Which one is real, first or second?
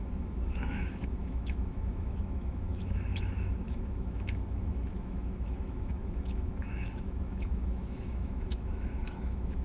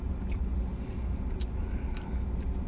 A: second